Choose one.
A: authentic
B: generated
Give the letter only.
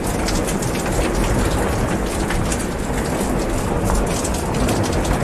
A